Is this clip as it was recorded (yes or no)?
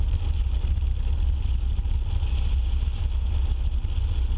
yes